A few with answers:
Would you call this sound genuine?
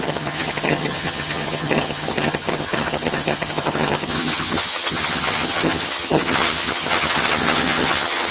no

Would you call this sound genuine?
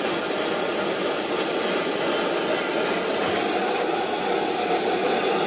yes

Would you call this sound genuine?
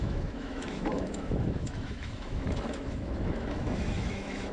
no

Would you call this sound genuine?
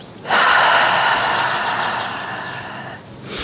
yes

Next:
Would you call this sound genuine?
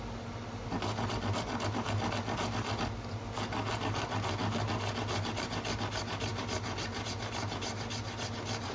yes